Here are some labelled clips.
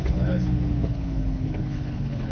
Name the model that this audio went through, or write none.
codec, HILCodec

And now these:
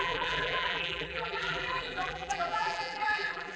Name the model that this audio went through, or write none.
vocoder, BigVGAN v2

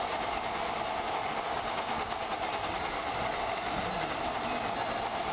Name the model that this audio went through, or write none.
none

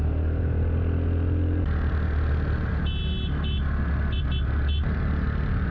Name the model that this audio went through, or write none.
none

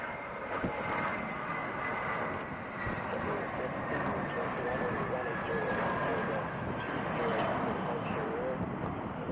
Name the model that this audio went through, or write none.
none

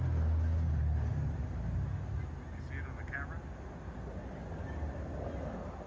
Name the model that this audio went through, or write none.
none